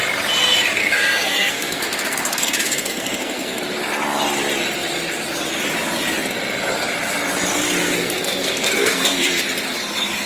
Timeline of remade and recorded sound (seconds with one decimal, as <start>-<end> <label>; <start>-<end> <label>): 0.0-0.8 recorded; 0.8-3.6 remade; 3.6-7.8 recorded; 7.8-9.4 remade; 9.4-10.3 recorded